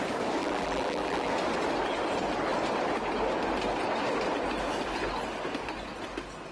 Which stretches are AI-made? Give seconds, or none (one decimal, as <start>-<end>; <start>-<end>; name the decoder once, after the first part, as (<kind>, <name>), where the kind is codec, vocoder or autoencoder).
0.4-1.3 (vocoder, BigVGAN v2)